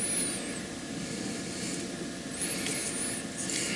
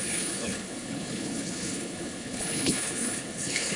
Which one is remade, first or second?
second